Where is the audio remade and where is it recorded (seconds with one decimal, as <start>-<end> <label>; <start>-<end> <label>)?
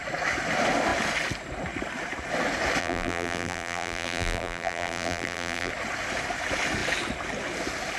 0.0-2.8 recorded; 2.8-5.7 remade; 5.7-8.0 recorded